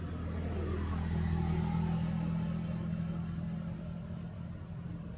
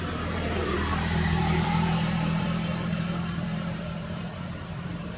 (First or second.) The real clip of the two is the first